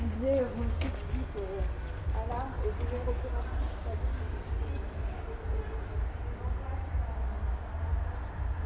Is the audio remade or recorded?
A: recorded